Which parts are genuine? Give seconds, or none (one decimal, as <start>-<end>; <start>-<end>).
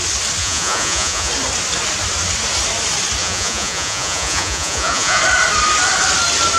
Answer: 0.0-0.4; 1.3-3.2; 5.2-6.6